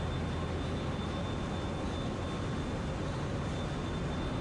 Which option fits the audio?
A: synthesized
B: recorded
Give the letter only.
B